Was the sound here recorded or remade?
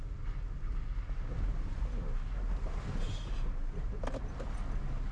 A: recorded